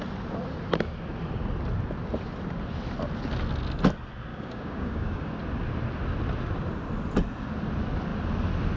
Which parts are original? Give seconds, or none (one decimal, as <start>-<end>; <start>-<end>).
0.0-4.3; 5.3-8.8